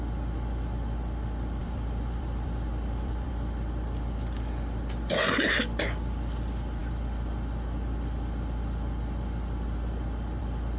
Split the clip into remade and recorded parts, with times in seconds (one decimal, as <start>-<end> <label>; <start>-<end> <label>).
0.0-1.6 recorded; 1.6-3.3 remade; 3.3-10.8 recorded